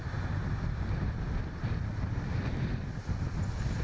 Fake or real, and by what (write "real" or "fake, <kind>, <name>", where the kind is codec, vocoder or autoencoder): real